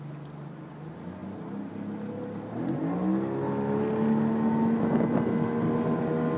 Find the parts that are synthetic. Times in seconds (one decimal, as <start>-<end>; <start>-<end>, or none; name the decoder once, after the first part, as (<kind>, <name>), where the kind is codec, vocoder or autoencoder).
none